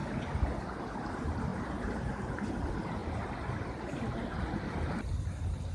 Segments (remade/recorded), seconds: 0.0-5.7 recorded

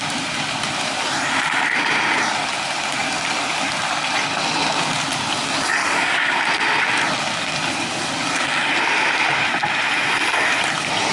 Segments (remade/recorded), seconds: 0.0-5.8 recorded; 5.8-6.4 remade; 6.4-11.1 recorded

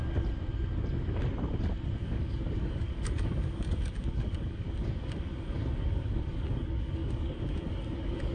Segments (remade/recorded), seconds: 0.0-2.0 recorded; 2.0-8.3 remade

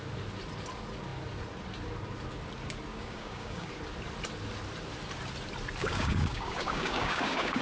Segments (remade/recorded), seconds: 0.0-2.9 recorded; 2.9-3.7 remade; 3.7-5.8 recorded; 5.8-7.6 remade